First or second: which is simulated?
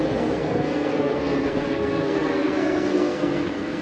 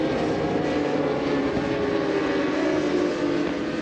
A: first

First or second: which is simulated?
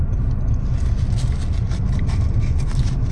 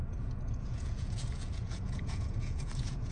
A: second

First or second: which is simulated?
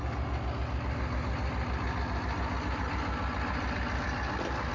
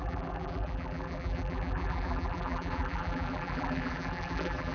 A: second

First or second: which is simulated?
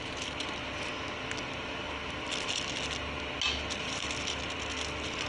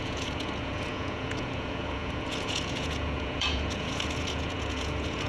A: second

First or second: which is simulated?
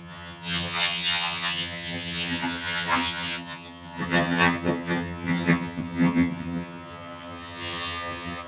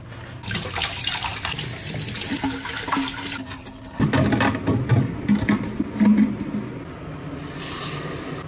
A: first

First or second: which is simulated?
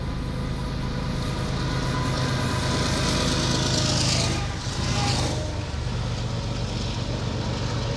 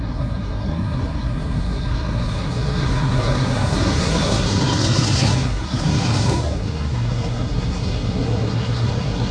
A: second